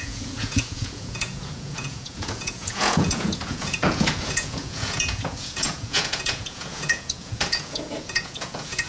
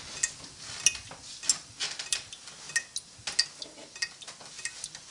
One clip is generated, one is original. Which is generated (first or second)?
first